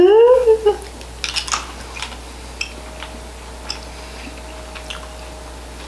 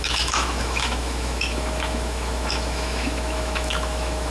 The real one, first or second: first